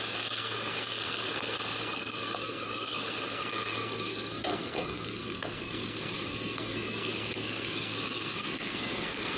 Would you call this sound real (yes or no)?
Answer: no